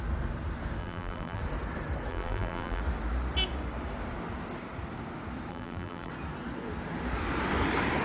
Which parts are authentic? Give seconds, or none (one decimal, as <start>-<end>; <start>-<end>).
0.0-0.8; 1.4-2.1; 2.8-5.5; 6.1-8.0

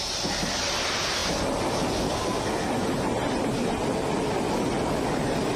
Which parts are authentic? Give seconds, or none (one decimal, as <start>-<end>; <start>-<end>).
0.0-5.6

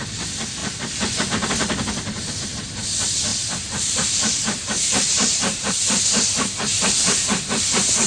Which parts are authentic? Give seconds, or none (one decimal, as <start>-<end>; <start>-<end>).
0.0-0.6; 1.5-3.3

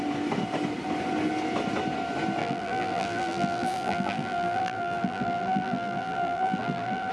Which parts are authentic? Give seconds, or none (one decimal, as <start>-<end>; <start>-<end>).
0.0-2.4

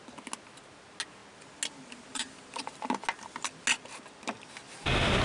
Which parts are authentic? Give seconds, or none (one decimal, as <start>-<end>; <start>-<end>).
0.0-2.1; 2.7-5.2

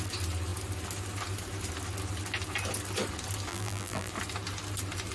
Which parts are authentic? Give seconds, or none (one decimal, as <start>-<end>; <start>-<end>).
0.0-3.5; 4.1-5.1

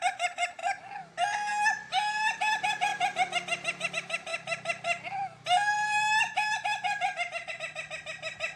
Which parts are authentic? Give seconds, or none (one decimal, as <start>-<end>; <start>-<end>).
0.0-8.6